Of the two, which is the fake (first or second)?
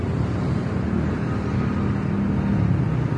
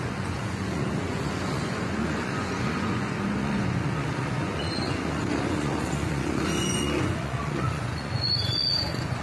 second